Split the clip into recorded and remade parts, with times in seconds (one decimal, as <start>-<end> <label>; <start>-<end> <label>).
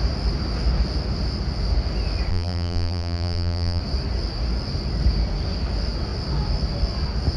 0.0-2.3 recorded; 2.3-3.8 remade; 3.8-7.4 recorded